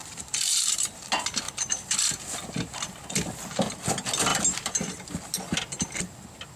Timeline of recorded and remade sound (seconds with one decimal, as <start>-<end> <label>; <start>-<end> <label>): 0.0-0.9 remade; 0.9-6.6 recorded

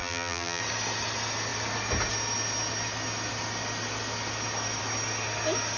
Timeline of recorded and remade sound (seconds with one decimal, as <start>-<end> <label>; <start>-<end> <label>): 0.0-0.6 remade; 0.6-5.8 recorded

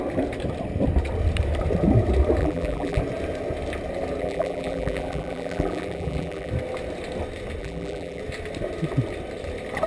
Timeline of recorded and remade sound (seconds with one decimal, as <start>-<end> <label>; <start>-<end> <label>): 0.0-2.4 recorded; 2.4-3.0 remade; 3.0-4.2 recorded; 4.2-6.5 remade; 6.5-7.6 recorded; 7.6-8.2 remade; 8.2-9.9 recorded

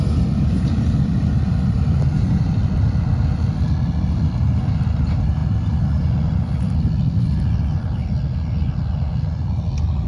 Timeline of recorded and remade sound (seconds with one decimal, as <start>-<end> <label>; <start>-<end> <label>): 0.0-10.1 recorded

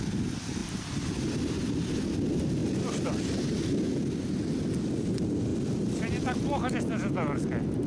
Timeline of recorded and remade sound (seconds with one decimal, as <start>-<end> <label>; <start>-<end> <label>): 0.0-0.6 recorded; 0.6-1.4 remade; 1.4-2.6 recorded; 2.6-4.5 remade; 4.5-5.5 recorded; 5.5-6.7 remade; 6.7-7.9 recorded

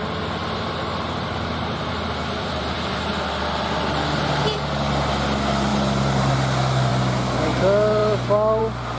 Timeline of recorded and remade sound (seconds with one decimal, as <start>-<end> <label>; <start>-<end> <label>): 0.0-0.4 recorded; 0.4-3.1 remade; 3.1-5.7 recorded; 5.7-6.3 remade; 6.3-9.0 recorded

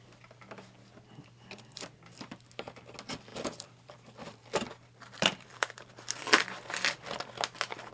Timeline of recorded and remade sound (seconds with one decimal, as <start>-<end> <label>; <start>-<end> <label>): 0.0-3.3 recorded; 3.3-5.9 remade; 5.9-7.9 recorded